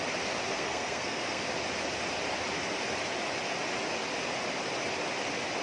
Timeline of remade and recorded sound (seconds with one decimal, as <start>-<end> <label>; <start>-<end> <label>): 0.0-0.5 recorded; 0.5-1.4 remade; 1.4-5.6 recorded